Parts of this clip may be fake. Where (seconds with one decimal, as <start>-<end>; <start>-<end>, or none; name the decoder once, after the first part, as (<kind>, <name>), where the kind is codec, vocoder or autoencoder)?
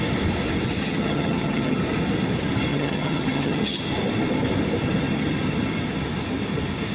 0.8-1.8 (vocoder, HiFi-GAN); 2.7-3.8